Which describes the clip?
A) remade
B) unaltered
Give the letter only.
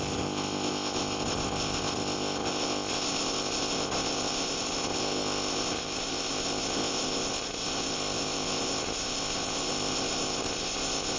A